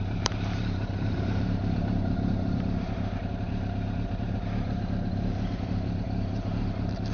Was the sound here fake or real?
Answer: fake